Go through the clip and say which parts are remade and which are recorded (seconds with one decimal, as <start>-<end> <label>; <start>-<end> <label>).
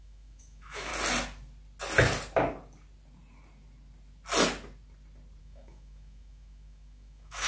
0.0-0.9 remade; 0.9-5.4 recorded; 5.4-7.5 remade